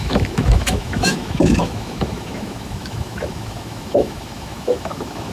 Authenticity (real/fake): fake